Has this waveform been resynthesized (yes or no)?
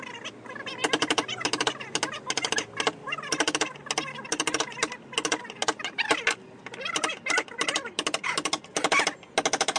no